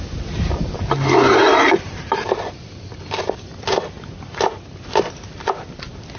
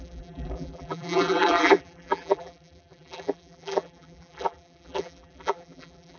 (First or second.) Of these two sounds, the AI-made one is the second